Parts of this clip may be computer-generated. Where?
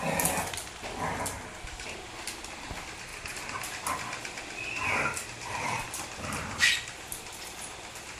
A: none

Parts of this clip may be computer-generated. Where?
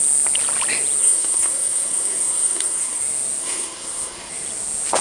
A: 1.0-3.0 (codec, SNAC); 3.4-4.3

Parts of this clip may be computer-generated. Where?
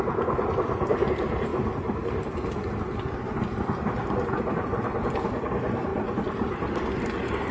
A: none